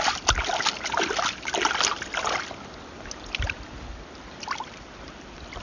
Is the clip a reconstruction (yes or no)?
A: no